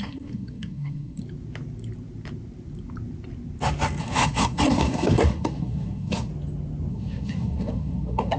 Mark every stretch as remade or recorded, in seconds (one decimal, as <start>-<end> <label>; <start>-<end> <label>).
0.0-1.2 remade; 1.2-4.0 recorded; 4.0-6.3 remade; 6.3-6.9 recorded; 6.9-8.4 remade